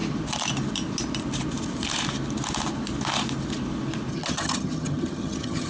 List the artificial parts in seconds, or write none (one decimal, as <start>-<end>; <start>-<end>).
4.1-5.7